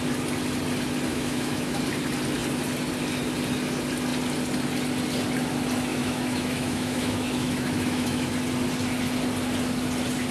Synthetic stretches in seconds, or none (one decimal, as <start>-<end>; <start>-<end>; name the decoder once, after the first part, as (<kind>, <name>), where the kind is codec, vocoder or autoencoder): 1.1-1.8 (autoencoder, DAC-VAE); 5.9-8.3